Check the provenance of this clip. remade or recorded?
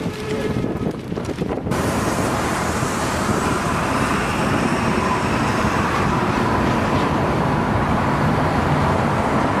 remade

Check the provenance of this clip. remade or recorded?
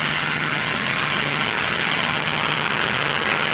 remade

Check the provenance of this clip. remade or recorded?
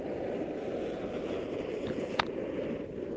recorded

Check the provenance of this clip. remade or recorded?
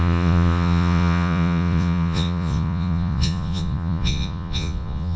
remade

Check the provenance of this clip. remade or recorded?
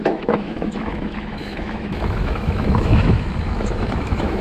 remade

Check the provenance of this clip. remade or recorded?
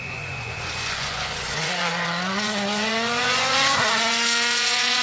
remade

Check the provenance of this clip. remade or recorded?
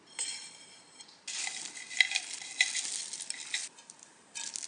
recorded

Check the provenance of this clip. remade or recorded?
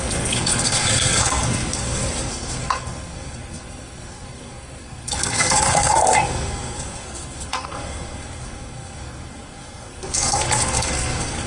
remade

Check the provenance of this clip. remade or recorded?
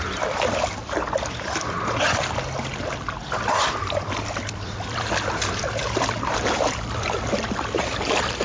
remade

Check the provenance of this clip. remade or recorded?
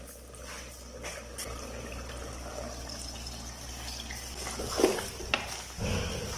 recorded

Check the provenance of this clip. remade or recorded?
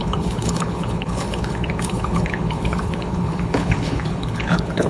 remade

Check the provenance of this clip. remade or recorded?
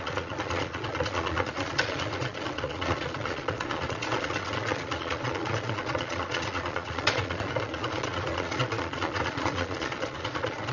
remade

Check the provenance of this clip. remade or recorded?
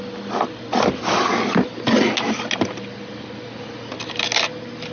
recorded